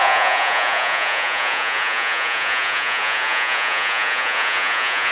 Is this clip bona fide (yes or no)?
no